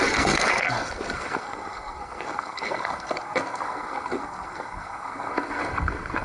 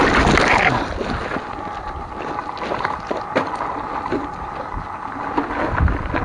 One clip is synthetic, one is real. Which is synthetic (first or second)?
first